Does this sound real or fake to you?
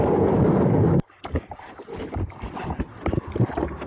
real